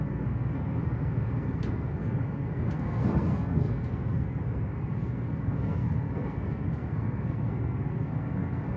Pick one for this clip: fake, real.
fake